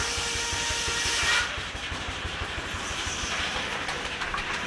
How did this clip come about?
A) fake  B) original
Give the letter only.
A